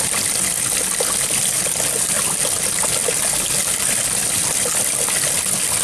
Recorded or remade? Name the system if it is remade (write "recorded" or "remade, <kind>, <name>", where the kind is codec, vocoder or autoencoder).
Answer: recorded